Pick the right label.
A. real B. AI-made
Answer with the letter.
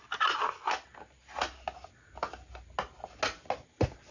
A